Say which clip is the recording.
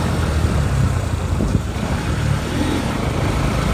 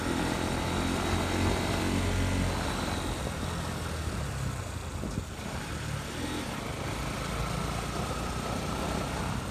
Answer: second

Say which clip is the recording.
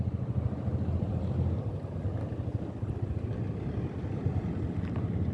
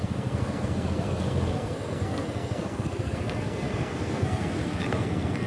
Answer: first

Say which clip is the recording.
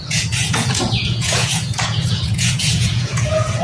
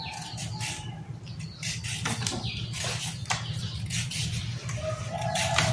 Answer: second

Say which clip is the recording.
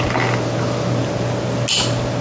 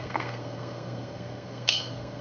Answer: first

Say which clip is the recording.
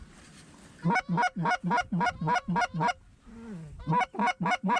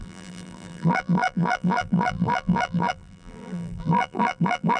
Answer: first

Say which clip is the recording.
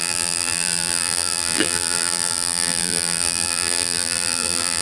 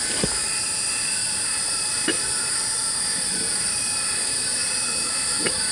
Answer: second